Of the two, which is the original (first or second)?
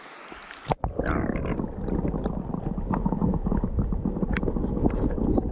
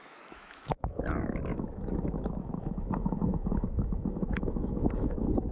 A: first